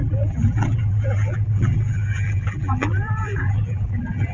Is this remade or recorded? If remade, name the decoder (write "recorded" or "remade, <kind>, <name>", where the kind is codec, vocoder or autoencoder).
remade, vocoder, BigVGAN v2